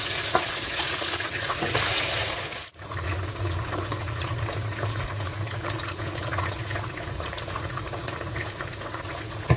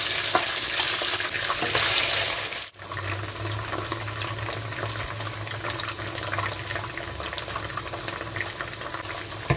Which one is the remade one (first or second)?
first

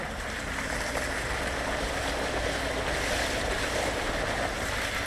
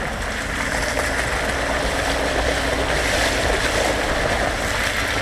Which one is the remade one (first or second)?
first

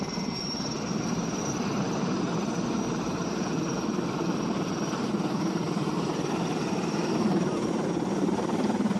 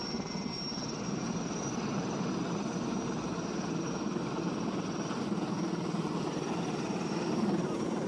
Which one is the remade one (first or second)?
first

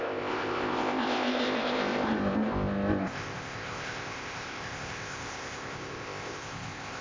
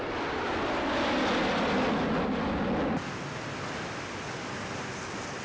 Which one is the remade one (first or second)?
first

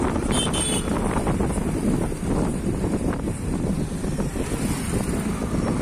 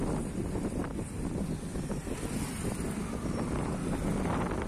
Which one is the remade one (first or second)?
first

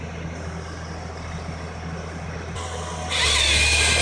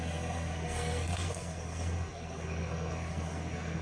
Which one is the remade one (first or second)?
second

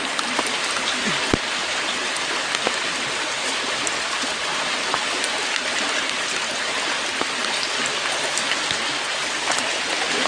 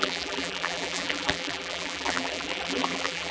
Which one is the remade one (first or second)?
second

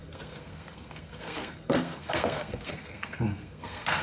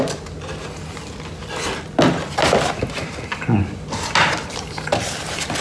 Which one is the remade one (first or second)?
first